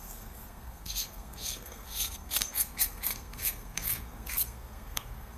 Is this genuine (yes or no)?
no